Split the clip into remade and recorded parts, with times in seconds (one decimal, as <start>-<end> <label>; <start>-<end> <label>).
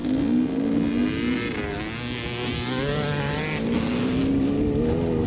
0.0-5.3 recorded